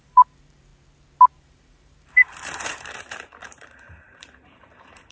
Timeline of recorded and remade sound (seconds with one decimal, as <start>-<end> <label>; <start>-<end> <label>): 0.0-0.7 remade; 0.7-1.4 recorded; 1.4-5.1 remade